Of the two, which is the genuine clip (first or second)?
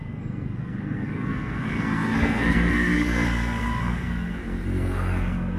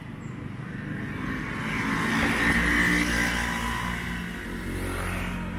second